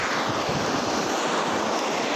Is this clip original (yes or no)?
yes